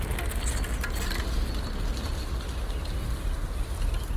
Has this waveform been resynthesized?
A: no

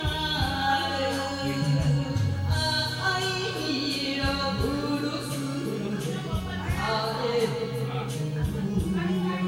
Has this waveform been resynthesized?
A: no